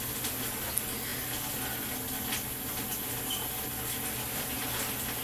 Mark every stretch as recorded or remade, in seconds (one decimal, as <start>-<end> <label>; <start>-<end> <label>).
0.0-5.2 recorded